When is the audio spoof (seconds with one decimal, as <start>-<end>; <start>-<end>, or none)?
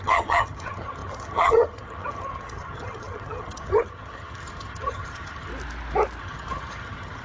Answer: 0.0-5.5; 6.2-7.2